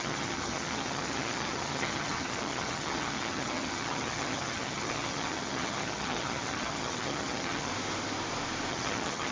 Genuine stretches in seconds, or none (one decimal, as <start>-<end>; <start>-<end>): 7.7-8.7